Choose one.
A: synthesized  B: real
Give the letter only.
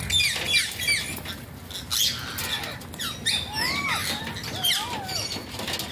B